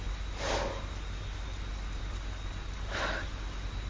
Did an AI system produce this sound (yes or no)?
no